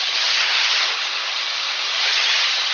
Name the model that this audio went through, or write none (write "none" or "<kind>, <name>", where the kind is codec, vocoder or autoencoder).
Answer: vocoder, HiFi-GAN